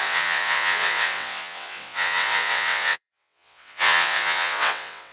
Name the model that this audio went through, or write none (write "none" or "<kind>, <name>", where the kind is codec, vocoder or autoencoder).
vocoder, WaveNeXt